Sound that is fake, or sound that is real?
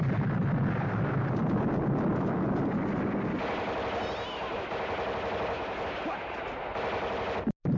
real